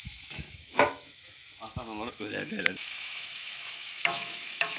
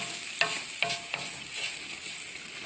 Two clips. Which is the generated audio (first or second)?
first